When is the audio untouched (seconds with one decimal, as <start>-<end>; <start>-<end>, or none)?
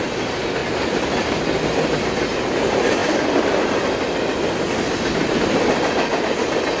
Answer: 0.0-6.8